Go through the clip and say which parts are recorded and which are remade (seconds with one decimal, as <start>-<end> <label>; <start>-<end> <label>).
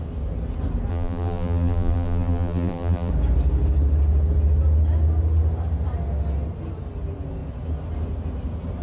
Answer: 0.0-0.9 recorded; 0.9-3.1 remade; 3.1-8.8 recorded